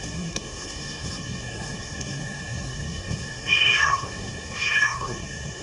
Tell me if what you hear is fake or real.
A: fake